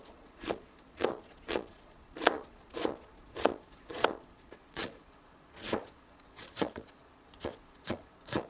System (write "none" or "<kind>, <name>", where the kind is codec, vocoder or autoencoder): vocoder, Vocos